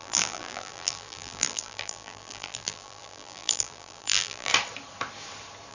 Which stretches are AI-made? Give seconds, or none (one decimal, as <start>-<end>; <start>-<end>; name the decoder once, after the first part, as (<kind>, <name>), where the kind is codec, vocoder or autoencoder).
0.0-4.5 (vocoder, BigVGAN v2)